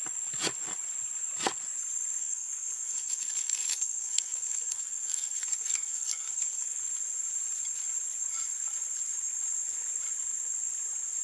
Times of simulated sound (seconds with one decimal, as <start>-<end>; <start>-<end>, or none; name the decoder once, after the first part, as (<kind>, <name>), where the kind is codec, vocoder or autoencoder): 2.2-6.8 (codec, SNAC)